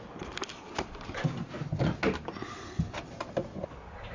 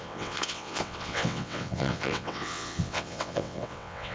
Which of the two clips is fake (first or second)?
second